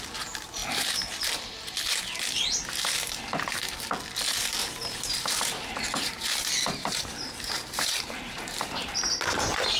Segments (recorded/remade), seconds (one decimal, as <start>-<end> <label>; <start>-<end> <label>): 0.0-4.6 recorded; 4.6-9.1 remade; 9.1-9.8 recorded